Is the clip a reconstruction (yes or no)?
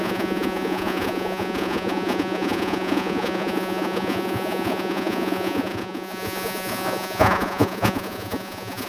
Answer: yes